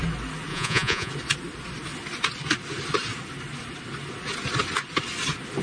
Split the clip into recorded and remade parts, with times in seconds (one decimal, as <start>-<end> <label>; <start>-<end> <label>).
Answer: 0.0-0.5 recorded; 0.5-1.1 remade; 1.1-5.6 recorded